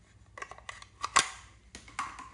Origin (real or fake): real